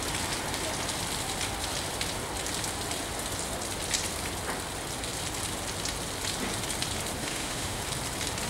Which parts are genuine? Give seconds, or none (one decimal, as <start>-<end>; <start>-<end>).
0.0-7.2; 7.8-8.5